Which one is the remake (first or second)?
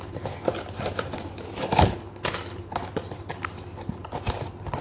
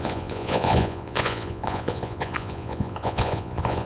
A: second